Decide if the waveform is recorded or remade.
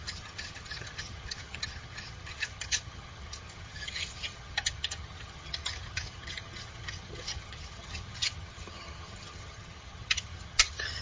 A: remade